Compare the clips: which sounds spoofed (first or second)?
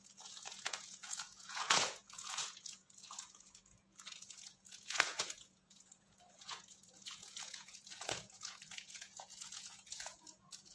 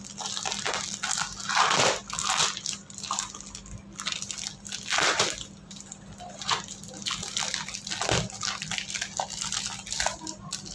first